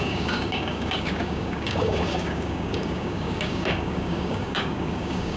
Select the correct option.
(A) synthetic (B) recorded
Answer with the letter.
A